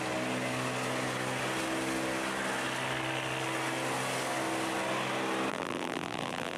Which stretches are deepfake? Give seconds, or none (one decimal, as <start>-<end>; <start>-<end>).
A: 5.5-6.6